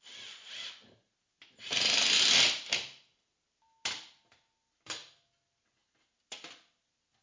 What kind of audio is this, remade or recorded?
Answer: recorded